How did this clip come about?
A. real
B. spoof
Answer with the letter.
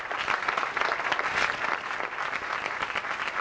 A